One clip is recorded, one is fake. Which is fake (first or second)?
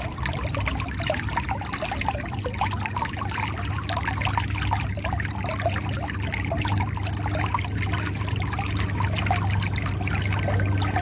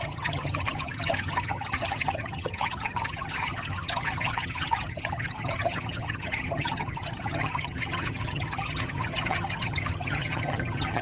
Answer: second